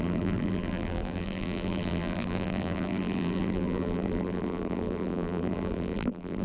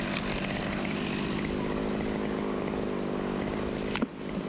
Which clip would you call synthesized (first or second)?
first